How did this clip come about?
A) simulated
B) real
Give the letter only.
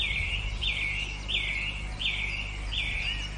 B